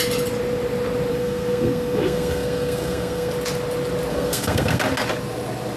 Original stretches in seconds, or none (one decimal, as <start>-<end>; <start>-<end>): 0.0-1.1; 3.3-4.1; 4.8-5.8